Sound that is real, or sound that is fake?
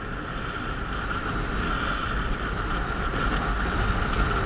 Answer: real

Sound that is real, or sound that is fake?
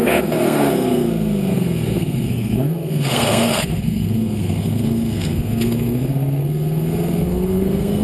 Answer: fake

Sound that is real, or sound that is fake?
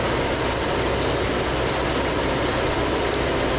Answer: real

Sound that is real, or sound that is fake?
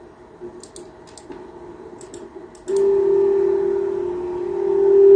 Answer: real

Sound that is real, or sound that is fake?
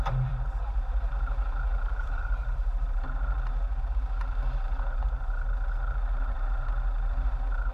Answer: fake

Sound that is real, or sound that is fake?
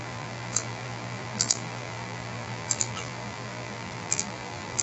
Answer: fake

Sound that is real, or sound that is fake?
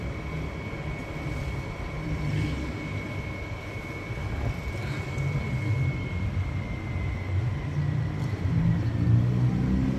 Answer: real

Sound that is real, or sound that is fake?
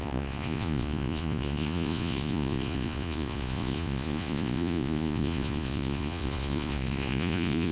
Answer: fake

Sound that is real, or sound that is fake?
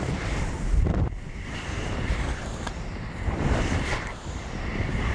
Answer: fake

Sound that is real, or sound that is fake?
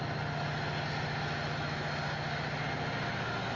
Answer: real